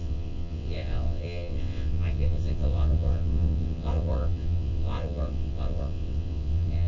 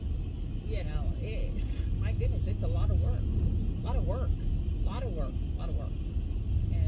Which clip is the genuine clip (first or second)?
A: second